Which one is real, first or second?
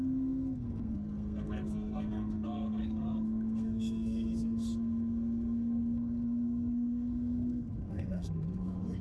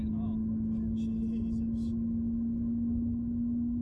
second